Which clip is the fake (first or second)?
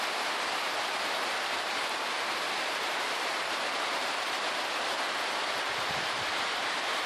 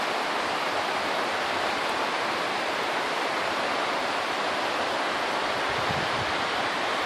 first